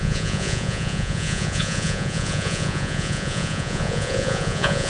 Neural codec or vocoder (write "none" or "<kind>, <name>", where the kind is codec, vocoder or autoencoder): vocoder, Vocos